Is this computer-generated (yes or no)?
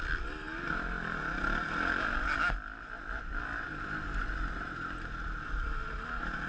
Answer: no